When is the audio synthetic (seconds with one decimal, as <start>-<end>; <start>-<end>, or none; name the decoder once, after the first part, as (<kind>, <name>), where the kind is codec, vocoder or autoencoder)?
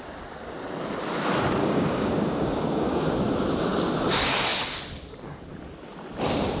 1.6-3.1 (codec, DAC)